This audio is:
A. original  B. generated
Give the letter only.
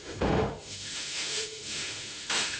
B